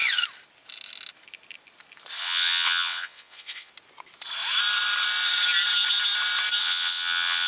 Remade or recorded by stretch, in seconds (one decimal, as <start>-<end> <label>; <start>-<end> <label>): 0.0-2.2 recorded; 2.2-3.7 remade; 3.7-6.6 recorded; 6.6-7.5 remade